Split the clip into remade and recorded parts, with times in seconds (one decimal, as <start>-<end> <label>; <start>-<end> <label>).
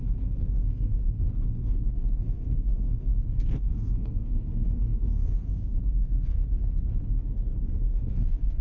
0.0-1.0 remade; 1.0-1.5 recorded; 1.5-6.4 remade; 6.4-7.3 recorded; 7.3-8.6 remade